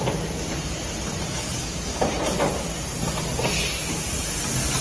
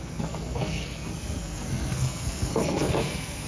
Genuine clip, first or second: first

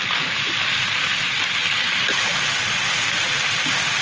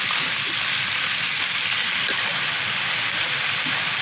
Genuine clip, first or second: first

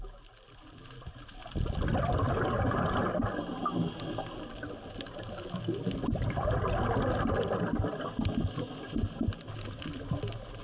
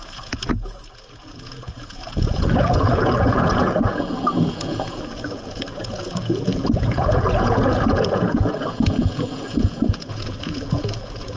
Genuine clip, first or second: first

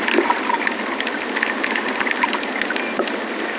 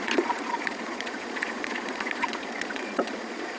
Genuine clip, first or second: first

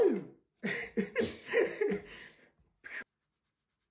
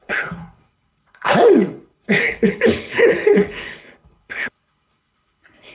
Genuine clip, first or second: first